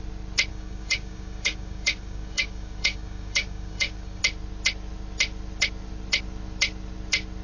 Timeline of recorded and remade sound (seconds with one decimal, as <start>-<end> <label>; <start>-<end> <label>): 0.0-0.5 recorded; 0.5-4.2 remade; 4.2-7.4 recorded